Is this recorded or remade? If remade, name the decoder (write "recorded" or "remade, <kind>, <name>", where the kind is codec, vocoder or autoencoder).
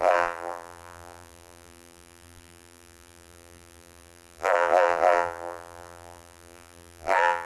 remade, vocoder, BigVGAN v2